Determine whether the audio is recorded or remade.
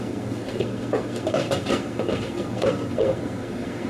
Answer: remade